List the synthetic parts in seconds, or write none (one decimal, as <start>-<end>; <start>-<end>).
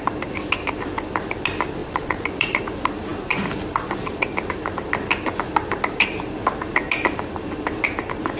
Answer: 1.8-2.6